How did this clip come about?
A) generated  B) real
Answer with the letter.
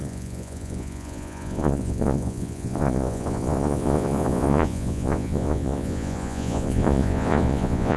A